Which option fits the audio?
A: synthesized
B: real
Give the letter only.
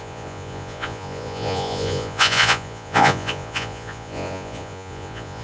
A